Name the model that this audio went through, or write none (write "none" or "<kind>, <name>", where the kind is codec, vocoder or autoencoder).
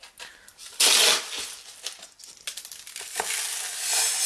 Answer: none